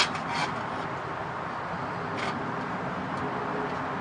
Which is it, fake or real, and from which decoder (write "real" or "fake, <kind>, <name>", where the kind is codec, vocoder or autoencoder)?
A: real